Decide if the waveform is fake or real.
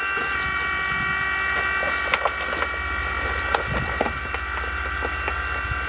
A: real